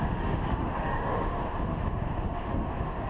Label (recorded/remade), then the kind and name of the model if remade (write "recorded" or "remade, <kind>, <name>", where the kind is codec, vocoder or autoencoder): remade, autoencoder, DAC-VAE